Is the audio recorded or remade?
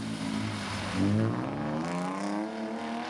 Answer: recorded